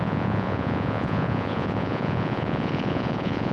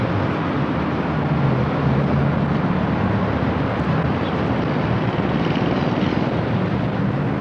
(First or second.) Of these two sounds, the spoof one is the first